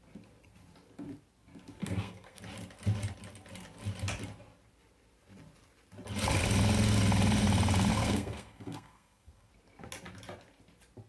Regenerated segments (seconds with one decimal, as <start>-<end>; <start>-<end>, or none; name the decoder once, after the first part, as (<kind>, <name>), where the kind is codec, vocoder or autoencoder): 1.8-2.4 (codec, SNAC); 7.9-9.5